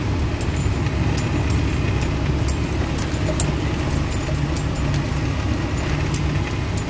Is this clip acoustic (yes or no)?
yes